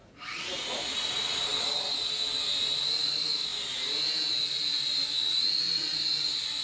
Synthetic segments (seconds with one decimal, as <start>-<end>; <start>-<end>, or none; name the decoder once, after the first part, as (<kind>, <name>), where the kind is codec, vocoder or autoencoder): 0.0-1.5 (vocoder, Vocos); 2.9-3.5; 4.4-6.6